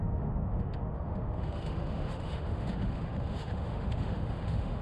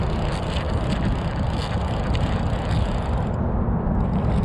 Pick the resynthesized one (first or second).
first